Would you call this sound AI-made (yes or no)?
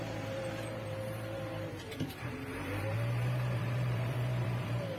yes